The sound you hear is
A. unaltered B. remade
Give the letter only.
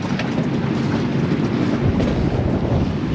A